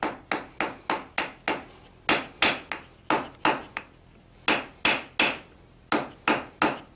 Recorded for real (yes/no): yes